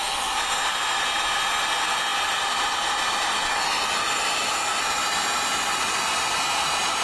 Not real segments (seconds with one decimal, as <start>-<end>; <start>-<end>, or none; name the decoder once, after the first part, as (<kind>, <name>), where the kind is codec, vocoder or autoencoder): none